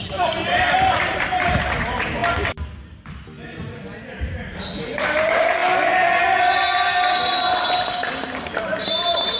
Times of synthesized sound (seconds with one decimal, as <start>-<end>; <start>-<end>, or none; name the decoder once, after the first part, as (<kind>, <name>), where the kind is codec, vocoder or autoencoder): 0.0-2.2 (vocoder, BigVGAN v2); 3.6-5.6; 8.6-9.4